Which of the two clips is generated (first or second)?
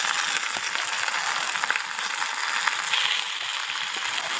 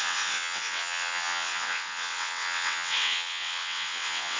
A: second